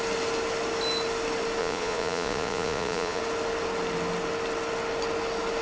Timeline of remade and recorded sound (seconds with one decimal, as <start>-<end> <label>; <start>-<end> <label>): 0.0-1.6 recorded; 1.6-3.2 remade; 3.2-5.6 recorded